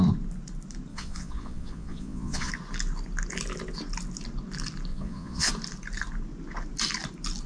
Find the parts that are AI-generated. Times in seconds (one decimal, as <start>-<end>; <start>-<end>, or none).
0.9-2.5; 4.9-5.5